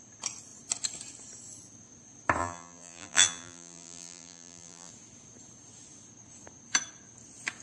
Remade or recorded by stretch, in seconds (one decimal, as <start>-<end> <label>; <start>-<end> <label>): 0.0-2.4 recorded; 2.4-4.9 remade; 4.9-7.6 recorded